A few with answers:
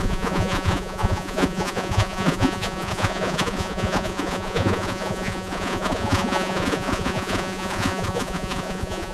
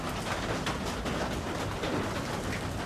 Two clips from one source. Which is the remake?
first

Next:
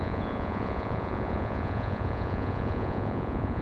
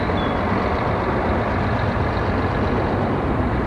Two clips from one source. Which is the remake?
first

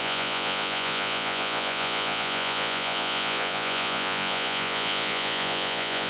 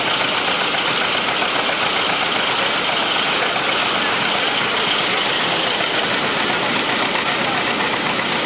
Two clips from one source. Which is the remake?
first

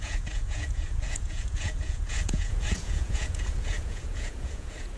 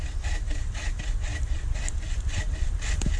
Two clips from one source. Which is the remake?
first